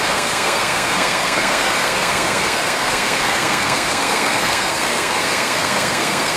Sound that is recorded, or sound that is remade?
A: remade